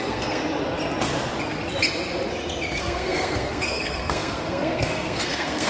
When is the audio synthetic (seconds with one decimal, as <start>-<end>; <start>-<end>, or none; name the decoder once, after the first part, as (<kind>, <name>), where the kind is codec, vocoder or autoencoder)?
0.0-0.4 (codec, SNAC); 2.8-5.7

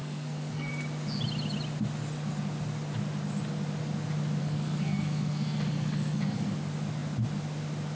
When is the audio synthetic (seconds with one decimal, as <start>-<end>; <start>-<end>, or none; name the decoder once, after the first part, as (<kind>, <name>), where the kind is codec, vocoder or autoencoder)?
0.0-0.7 (codec, SNAC); 4.4-6.5

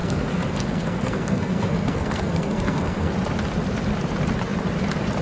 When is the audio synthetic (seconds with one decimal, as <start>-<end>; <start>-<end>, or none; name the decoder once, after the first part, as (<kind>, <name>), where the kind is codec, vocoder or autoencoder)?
0.0-3.1 (codec, SNAC)

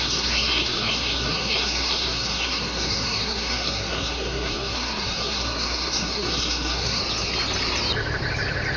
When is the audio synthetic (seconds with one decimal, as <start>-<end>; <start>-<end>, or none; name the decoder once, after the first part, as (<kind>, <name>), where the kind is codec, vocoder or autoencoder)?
0.0-7.0 (codec, SNAC)

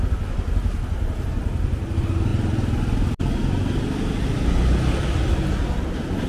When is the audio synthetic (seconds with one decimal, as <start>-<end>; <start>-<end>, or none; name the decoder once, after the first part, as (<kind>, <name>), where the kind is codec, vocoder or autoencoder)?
none

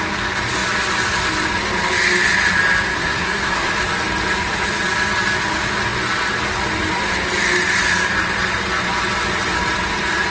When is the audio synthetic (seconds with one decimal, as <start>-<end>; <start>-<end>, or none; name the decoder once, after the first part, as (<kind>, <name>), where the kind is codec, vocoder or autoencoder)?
2.9-3.7 (codec, SNAC)

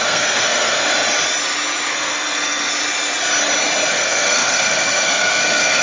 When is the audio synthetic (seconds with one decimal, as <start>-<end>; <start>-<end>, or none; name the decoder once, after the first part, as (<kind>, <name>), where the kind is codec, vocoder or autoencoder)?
0.0-0.9 (codec, SNAC); 1.9-2.7; 3.9-5.8

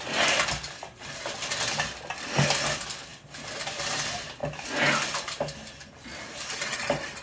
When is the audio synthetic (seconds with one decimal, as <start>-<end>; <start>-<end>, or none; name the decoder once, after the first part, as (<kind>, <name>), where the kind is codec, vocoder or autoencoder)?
none